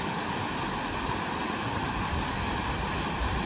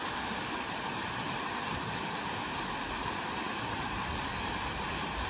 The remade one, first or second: first